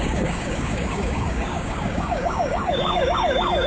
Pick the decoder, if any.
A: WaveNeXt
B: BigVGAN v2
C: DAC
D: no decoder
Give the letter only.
C